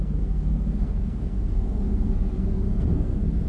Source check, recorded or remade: remade